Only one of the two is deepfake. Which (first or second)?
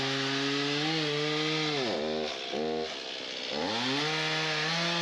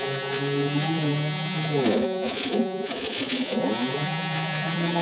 second